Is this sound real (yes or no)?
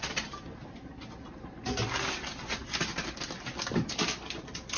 yes